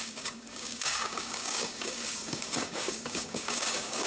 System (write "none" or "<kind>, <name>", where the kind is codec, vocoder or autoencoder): codec, DAC